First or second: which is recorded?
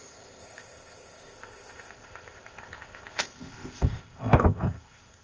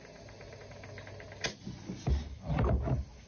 second